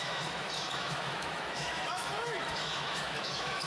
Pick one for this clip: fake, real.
fake